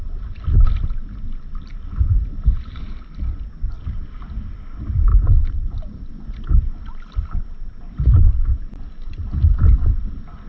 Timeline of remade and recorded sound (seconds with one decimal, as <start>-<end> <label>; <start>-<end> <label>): 0.0-1.7 recorded; 1.7-2.9 remade; 2.9-5.1 recorded; 5.1-6.1 remade; 6.1-10.5 recorded